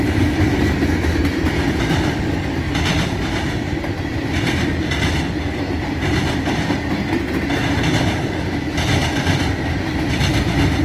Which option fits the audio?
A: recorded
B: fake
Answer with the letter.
A